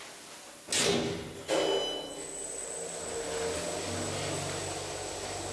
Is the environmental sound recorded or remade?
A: recorded